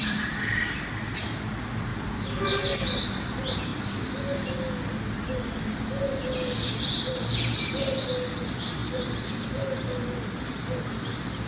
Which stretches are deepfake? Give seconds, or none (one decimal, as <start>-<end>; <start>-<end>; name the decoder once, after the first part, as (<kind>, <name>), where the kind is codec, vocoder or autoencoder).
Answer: 0.0-0.6 (vocoder, BigVGAN v2); 1.9-2.6